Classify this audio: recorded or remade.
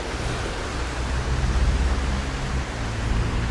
recorded